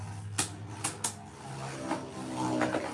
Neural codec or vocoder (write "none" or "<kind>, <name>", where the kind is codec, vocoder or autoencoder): none